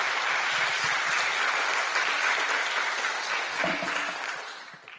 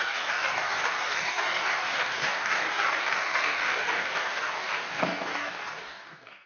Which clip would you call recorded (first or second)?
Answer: first